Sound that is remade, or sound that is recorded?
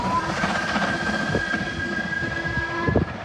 recorded